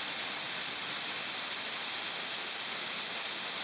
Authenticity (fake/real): real